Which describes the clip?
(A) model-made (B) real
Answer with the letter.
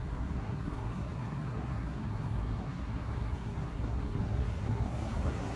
A